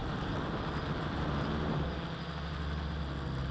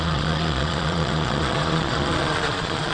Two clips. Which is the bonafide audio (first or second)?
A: first